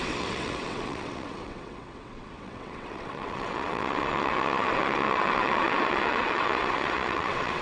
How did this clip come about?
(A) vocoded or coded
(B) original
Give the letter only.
A